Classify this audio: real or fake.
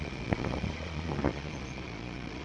fake